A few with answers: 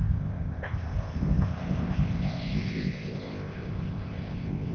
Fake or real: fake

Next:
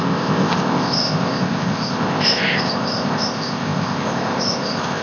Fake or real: fake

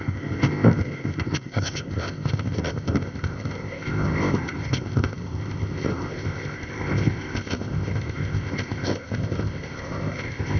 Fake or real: fake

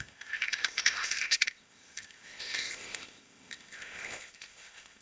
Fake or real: fake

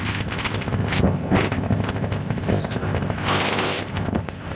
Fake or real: fake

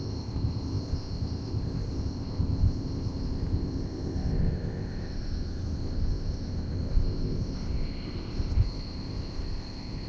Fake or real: fake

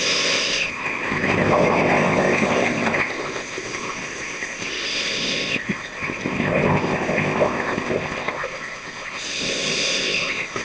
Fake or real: fake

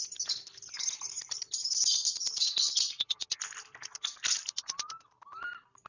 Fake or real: real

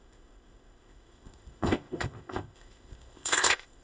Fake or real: fake